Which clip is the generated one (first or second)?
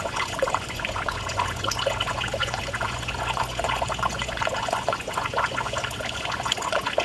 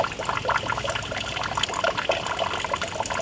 first